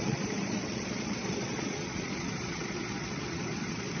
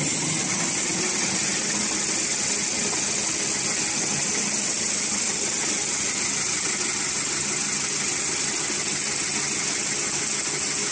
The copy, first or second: first